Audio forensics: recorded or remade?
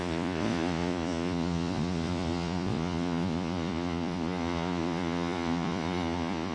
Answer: remade